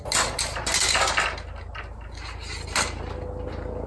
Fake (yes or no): no